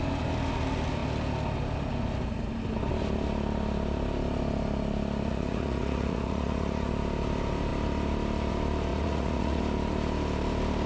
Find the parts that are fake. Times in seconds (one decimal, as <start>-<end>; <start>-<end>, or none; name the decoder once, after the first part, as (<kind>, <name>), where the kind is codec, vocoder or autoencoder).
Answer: 5.3-6.9 (vocoder, Vocos); 8.9-9.6